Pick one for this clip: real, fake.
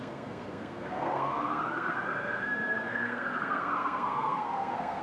fake